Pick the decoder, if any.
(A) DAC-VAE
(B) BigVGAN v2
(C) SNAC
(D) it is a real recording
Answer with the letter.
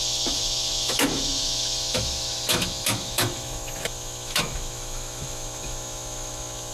A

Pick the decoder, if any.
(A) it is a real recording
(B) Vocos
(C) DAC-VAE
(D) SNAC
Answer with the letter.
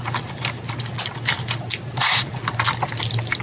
A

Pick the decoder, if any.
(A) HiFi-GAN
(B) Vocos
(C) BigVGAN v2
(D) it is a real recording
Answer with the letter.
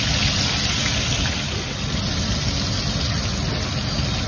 D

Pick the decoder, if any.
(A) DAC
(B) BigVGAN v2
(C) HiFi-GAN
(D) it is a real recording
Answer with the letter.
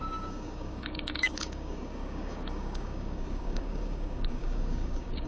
A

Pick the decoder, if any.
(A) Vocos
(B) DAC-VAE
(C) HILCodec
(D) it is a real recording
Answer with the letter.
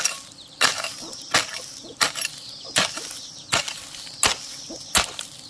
D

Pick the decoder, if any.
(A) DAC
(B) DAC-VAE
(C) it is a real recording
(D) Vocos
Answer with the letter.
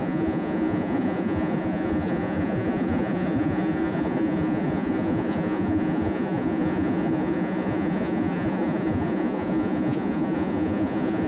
D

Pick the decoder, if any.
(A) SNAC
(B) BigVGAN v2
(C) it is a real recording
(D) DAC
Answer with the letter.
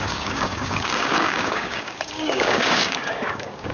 D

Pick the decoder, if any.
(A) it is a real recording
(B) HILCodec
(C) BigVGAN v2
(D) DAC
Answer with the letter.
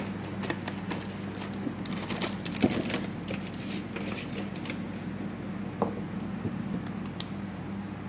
A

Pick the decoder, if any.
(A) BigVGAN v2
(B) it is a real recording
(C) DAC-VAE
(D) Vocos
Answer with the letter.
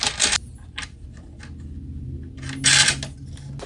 B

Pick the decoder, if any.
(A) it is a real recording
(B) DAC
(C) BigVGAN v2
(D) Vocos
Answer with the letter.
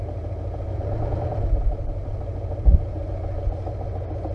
A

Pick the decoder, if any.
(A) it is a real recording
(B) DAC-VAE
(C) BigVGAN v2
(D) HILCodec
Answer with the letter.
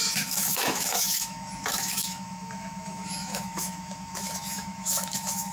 B